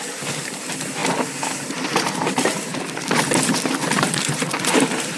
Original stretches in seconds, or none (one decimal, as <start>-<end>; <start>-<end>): 0.0-5.2